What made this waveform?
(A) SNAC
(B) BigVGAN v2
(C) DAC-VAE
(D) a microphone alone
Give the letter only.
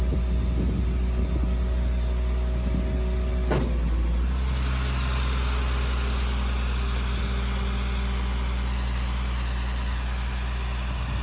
D